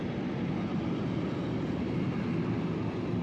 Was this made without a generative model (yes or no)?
yes